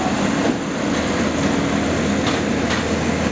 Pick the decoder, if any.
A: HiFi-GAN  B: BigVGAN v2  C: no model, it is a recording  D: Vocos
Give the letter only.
C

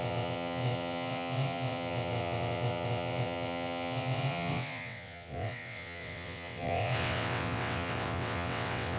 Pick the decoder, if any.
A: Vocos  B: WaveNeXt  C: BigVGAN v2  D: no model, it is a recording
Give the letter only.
B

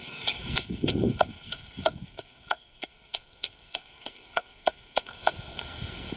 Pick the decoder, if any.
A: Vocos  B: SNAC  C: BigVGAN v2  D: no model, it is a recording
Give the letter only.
B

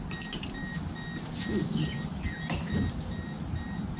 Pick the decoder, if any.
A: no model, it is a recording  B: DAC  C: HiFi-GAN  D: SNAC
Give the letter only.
A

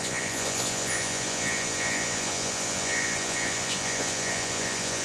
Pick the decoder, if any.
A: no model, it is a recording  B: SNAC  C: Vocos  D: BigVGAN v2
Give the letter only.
C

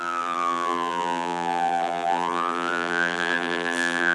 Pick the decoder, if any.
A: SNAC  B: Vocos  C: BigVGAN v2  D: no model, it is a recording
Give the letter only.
C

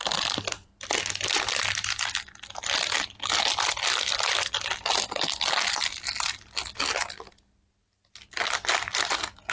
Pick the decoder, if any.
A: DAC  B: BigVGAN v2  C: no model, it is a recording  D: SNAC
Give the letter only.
C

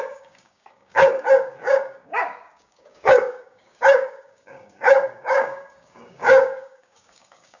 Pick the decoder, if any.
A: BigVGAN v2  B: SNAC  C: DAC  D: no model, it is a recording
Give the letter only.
C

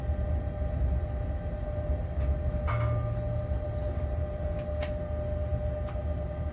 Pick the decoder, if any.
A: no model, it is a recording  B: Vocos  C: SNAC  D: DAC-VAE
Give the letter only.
A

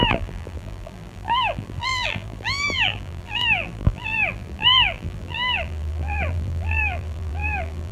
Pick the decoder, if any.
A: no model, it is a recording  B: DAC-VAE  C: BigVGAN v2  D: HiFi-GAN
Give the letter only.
C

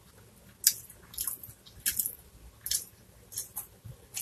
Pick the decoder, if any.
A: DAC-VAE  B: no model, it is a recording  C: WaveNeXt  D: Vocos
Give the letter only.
B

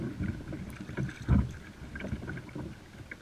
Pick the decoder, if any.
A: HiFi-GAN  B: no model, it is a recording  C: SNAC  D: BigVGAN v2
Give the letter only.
B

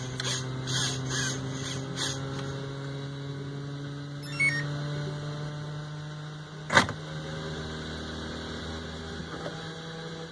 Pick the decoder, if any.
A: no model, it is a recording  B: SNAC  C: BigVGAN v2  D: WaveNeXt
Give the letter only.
A